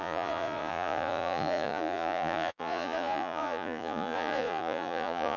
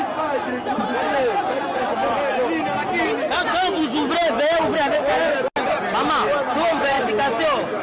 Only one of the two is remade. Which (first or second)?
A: first